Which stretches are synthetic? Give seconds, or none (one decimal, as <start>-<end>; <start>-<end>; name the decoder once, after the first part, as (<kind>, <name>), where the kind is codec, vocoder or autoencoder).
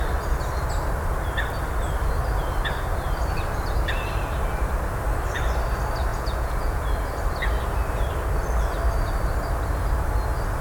6.1-6.8 (vocoder, Vocos)